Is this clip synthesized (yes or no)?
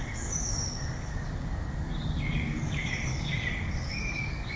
yes